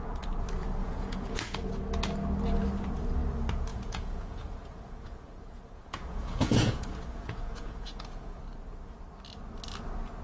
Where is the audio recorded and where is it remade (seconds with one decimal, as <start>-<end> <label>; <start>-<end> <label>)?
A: 0.0-0.8 recorded; 0.8-1.7 remade; 1.7-3.7 recorded; 3.7-8.4 remade; 8.4-10.2 recorded